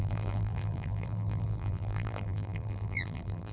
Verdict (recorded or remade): remade